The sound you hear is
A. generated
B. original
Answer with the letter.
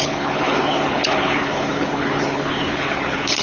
A